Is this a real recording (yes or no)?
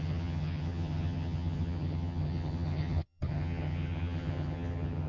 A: no